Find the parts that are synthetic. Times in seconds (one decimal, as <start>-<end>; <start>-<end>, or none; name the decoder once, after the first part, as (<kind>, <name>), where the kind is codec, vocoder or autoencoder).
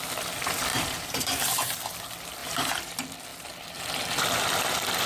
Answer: 0.7-1.8 (vocoder, BigVGAN v2); 2.4-2.9